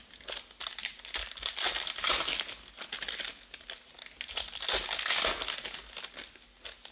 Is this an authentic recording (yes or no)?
yes